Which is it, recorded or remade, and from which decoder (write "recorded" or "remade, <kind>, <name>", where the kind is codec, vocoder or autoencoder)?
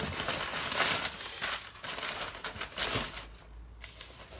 recorded